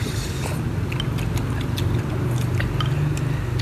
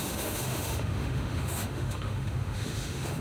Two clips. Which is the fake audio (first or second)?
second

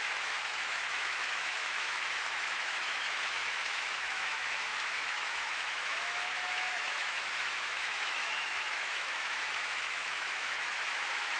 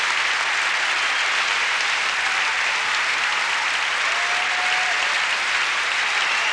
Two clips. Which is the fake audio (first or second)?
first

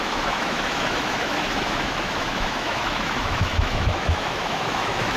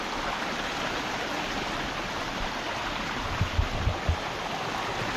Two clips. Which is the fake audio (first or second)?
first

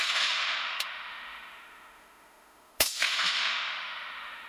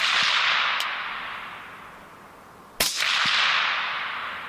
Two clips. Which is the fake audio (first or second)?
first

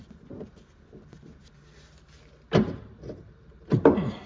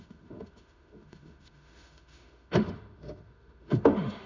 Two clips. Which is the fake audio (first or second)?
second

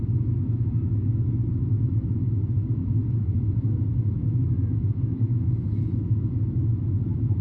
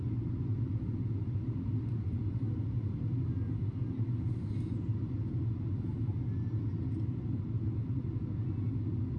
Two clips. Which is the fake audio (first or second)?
first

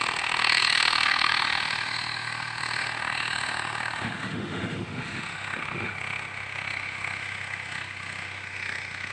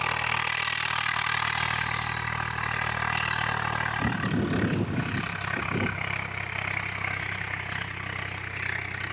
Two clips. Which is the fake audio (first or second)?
first